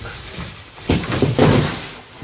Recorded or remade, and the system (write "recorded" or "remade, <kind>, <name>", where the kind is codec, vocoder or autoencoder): recorded